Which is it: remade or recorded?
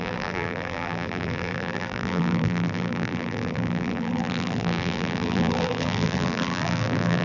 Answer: remade